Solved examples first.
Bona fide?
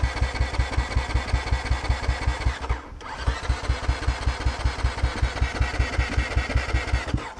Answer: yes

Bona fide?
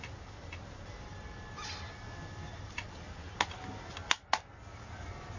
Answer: yes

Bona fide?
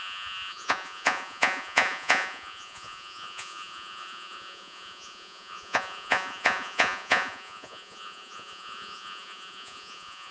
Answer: no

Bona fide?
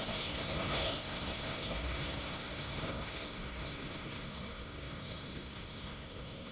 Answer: no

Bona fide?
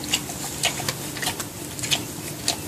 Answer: yes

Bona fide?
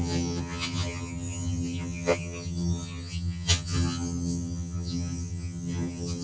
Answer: no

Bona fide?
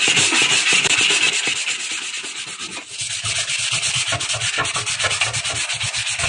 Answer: yes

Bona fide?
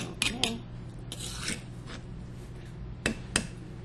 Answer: yes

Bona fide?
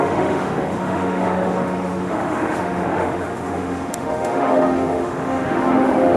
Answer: no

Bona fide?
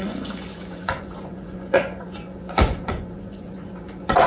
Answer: no